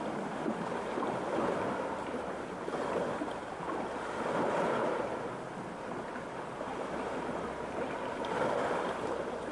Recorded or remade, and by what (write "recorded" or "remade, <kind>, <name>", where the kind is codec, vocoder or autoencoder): recorded